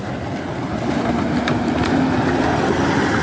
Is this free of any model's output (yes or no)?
yes